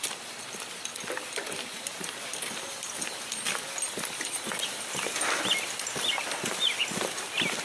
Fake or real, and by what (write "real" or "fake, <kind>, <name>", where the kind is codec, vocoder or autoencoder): real